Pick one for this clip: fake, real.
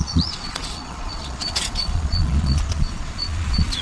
fake